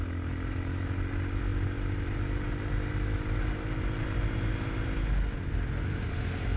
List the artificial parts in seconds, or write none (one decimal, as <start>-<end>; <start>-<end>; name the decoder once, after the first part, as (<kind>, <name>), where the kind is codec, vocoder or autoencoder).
none